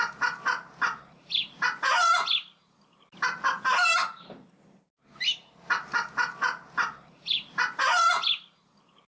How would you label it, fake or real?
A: real